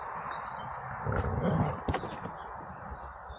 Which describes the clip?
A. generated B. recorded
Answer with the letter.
B